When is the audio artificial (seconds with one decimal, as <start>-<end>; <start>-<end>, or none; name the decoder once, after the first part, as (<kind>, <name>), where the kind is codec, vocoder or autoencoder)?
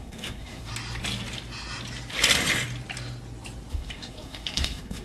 0.0-0.7 (codec, SNAC); 3.7-5.0